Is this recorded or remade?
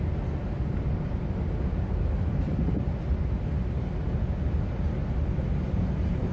recorded